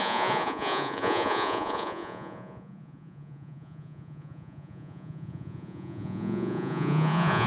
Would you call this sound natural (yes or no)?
no